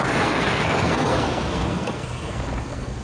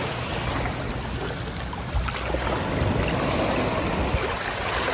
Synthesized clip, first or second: first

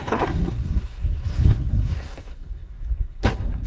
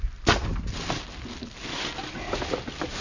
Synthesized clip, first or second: first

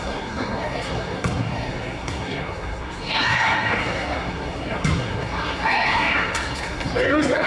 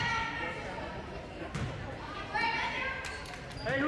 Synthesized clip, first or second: first